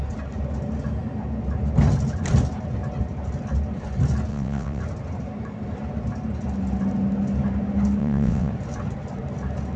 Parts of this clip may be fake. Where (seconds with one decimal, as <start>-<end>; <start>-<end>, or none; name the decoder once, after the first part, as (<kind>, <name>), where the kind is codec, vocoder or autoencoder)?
4.3-4.8 (vocoder, WaveNeXt); 8.0-8.5